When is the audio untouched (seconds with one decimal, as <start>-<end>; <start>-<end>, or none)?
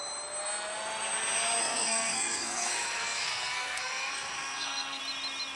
0.0-1.6; 5.0-5.6